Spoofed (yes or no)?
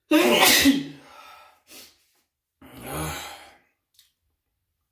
no